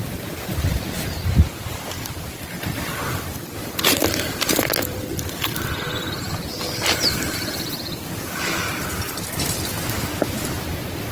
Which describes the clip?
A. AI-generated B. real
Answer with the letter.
A